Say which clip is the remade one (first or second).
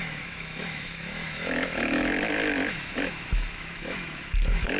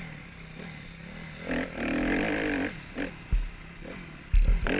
first